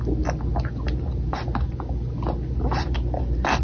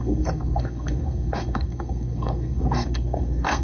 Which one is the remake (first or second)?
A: second